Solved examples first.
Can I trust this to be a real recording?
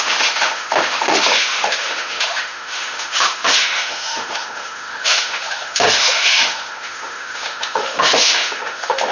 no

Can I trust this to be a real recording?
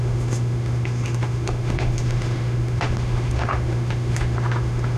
no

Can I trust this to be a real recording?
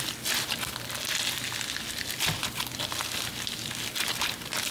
yes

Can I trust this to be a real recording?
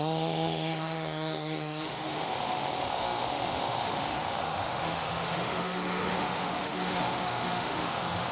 no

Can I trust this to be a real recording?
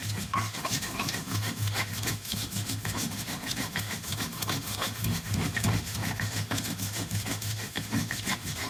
no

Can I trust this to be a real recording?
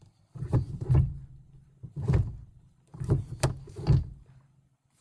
yes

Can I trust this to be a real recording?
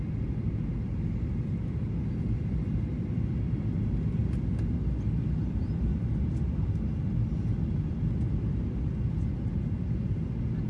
yes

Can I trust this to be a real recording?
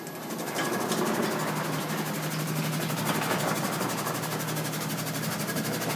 yes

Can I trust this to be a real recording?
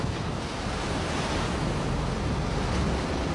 yes